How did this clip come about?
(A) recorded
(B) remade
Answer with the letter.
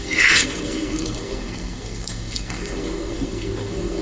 B